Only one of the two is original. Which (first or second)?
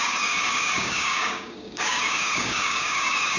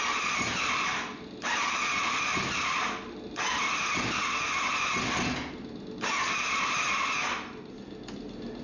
second